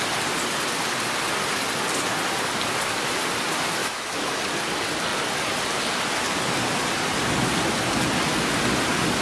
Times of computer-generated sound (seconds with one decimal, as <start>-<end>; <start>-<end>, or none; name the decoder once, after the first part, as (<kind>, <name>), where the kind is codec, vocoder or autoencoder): 3.8-4.4 (autoencoder, DAC-VAE)